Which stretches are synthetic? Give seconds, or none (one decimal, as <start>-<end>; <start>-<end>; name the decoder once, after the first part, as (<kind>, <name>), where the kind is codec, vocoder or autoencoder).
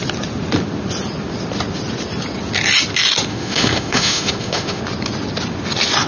3.3-4.8 (autoencoder, DAC-VAE)